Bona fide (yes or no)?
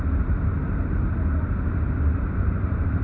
no